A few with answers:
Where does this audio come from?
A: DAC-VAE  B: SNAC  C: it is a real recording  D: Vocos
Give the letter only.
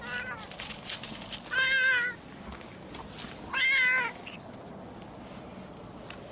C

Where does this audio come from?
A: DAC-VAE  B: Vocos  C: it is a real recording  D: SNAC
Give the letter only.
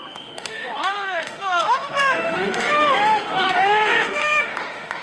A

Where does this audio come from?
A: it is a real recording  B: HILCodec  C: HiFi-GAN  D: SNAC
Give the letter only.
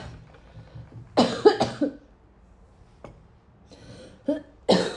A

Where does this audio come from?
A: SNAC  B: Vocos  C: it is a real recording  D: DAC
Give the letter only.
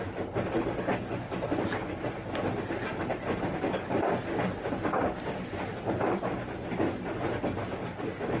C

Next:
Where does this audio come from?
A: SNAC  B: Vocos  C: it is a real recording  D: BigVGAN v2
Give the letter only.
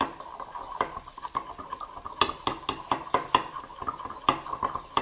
C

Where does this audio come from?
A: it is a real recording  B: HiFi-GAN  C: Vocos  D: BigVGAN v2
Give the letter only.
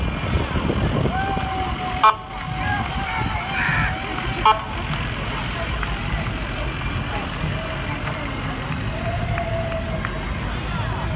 A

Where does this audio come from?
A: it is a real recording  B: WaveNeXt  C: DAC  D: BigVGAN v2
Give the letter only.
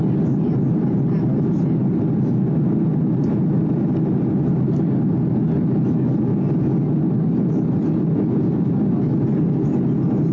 A